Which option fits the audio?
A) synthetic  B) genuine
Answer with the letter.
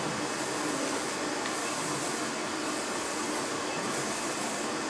B